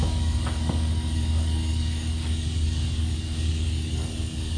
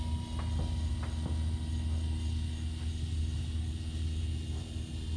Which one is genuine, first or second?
second